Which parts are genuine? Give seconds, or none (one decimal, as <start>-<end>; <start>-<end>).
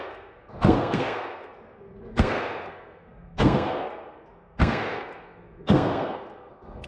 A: none